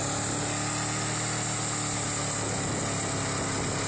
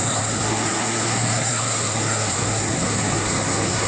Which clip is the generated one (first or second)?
second